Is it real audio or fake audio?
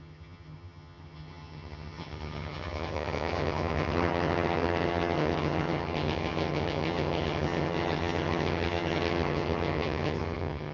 fake